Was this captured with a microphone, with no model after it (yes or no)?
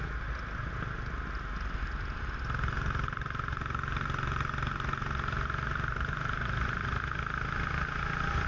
yes